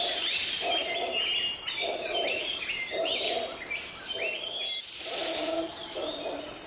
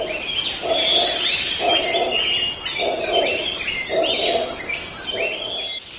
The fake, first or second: first